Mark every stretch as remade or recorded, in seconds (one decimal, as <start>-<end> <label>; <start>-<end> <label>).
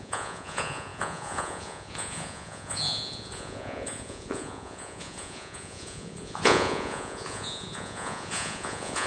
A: 0.0-9.1 remade